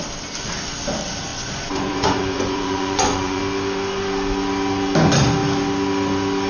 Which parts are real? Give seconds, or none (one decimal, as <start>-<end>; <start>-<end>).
0.0-1.3; 3.4-6.5